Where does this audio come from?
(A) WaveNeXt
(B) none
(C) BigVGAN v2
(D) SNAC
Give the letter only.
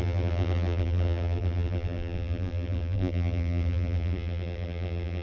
C